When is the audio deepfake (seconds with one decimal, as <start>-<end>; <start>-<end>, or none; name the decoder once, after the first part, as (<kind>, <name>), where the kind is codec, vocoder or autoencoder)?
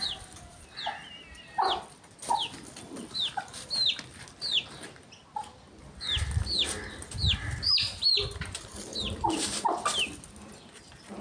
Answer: 8.9-9.7 (vocoder, BigVGAN v2)